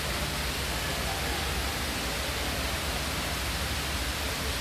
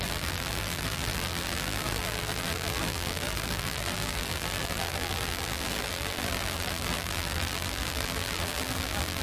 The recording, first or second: first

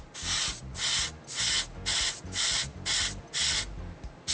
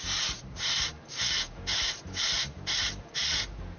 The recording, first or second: first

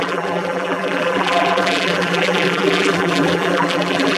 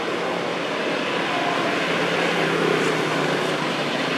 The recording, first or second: second